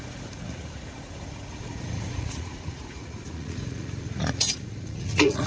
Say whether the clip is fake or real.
fake